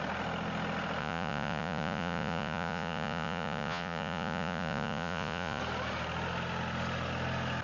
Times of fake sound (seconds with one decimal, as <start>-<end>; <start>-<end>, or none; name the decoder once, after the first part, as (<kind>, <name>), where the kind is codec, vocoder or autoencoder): 1.0-5.6 (vocoder, Vocos)